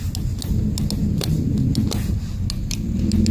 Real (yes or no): yes